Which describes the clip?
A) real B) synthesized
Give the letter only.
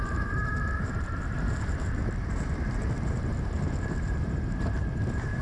B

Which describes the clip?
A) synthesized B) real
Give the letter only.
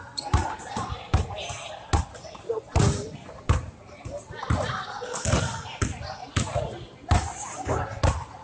B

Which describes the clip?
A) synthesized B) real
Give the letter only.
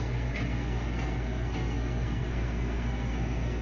A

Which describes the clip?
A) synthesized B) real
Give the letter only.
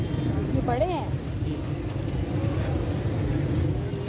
B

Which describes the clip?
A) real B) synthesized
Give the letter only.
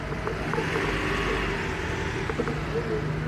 A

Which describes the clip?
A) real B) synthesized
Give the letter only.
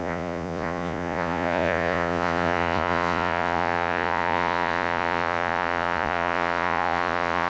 B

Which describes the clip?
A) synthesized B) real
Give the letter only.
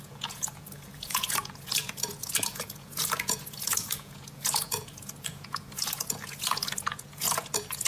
A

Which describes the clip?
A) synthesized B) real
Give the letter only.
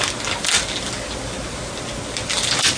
B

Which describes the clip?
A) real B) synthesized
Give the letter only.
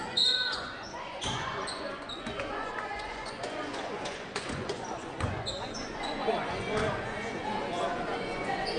B